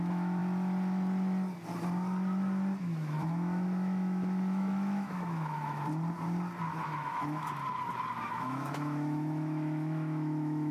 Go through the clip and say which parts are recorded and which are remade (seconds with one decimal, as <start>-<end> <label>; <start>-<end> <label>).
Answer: 0.0-0.4 remade; 0.4-2.8 recorded; 2.8-5.8 remade; 5.8-6.8 recorded; 6.8-7.6 remade; 7.6-8.3 recorded; 8.3-10.7 remade